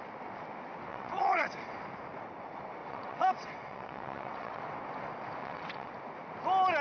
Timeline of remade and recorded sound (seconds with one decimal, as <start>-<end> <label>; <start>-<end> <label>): 0.0-0.9 recorded; 0.9-1.5 remade; 1.5-2.8 recorded; 2.8-4.6 remade; 4.6-5.4 recorded; 5.4-5.9 remade; 5.9-6.8 recorded